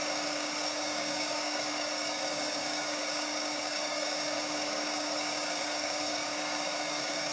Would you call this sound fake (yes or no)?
yes